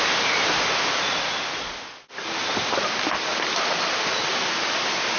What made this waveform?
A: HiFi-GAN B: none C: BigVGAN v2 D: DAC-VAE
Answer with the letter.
B